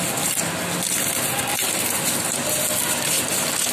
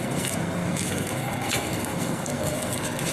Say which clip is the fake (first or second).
second